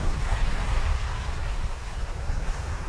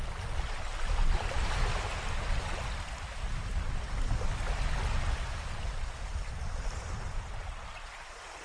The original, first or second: second